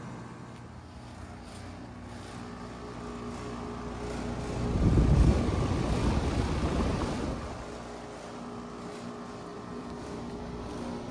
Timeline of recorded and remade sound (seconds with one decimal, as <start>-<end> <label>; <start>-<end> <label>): 0.0-9.5 recorded; 9.5-10.7 remade; 10.7-11.1 recorded